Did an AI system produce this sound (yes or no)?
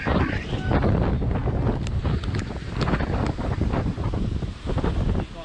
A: no